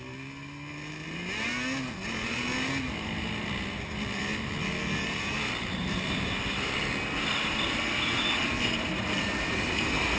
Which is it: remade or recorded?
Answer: recorded